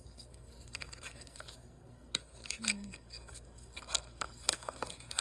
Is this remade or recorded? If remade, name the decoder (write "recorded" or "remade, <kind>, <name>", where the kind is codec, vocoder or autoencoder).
remade, codec, SNAC